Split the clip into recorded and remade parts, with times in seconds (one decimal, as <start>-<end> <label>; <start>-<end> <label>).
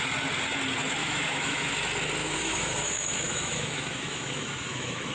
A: 0.0-1.0 recorded; 1.0-1.7 remade; 1.7-2.2 recorded; 2.2-5.1 remade